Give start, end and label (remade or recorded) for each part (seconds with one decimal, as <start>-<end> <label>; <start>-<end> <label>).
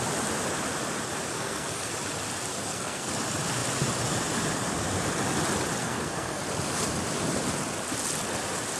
0.0-1.3 recorded; 1.3-1.9 remade; 1.9-2.5 recorded; 2.5-3.1 remade; 3.1-5.8 recorded; 5.8-6.4 remade; 6.4-8.8 recorded